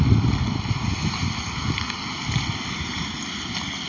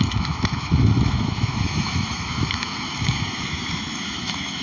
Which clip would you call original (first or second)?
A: first